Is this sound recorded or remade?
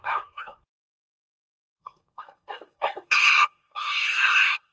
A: remade